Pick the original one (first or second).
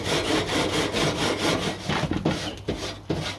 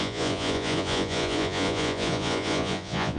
first